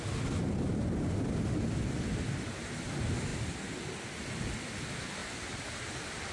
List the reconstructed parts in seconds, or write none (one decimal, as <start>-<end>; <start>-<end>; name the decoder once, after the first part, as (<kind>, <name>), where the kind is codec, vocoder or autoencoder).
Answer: 3.3-4.3 (vocoder, BigVGAN v2); 5.2-6.3